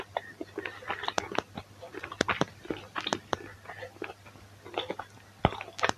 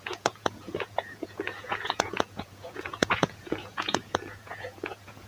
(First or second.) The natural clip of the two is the first